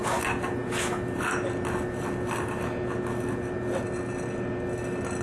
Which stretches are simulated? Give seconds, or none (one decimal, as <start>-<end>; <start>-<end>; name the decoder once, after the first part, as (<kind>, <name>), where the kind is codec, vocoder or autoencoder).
none